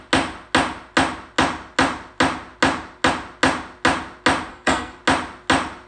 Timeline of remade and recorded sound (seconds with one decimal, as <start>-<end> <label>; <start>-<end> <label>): 0.0-4.5 recorded; 4.5-5.0 remade; 5.0-5.9 recorded